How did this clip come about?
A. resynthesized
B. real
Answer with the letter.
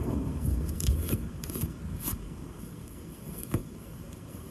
A